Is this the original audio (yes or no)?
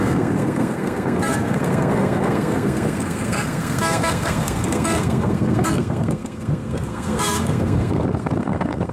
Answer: no